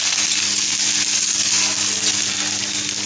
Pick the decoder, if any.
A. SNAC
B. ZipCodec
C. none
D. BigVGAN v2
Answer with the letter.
C